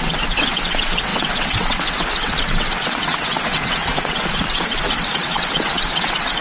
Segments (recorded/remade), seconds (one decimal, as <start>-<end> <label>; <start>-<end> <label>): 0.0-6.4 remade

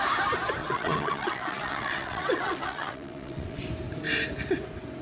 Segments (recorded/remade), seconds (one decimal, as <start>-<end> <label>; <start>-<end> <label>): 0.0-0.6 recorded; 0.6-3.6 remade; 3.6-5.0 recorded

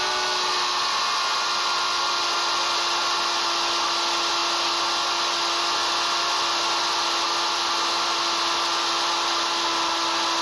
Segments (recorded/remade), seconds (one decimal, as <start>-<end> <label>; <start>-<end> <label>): 0.0-10.4 recorded

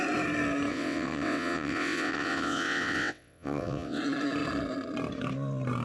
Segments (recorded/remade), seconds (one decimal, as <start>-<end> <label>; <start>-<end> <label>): 0.0-0.7 recorded; 0.7-4.0 remade; 4.0-5.8 recorded

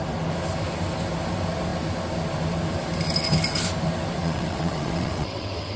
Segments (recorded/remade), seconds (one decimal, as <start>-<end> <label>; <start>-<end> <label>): 0.0-4.2 recorded; 4.2-5.8 remade

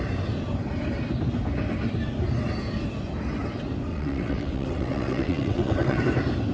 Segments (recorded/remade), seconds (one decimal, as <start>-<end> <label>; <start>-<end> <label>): 0.0-3.9 recorded; 3.9-6.0 remade; 6.0-6.5 recorded